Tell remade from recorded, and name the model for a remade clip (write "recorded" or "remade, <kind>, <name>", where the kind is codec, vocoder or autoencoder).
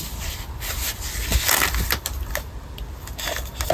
recorded